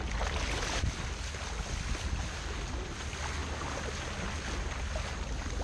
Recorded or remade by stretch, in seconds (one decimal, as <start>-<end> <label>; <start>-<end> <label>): 0.0-5.6 recorded